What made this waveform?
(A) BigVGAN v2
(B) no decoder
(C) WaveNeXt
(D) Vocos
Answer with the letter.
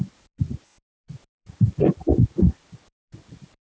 A